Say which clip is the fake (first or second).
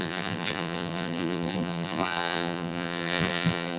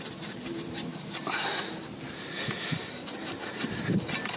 first